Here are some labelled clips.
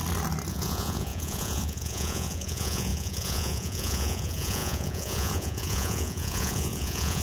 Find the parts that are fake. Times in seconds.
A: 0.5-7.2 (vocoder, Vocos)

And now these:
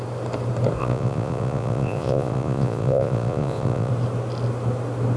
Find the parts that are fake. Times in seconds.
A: 0.8-3.9 (vocoder, Vocos)

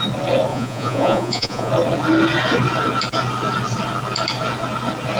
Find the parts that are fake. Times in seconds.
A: 0.5-1.7 (vocoder, Vocos)

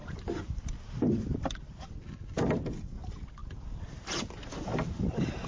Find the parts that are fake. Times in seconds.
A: none

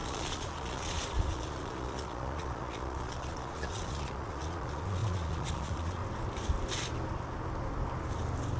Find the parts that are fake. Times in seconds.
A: 0.0-6.0 (vocoder, Vocos)